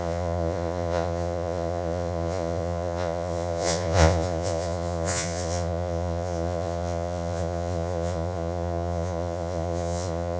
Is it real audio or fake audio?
fake